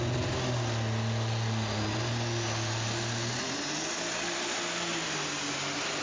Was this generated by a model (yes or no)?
no